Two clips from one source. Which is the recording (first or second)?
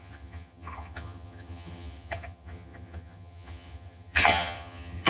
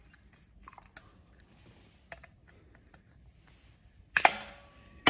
second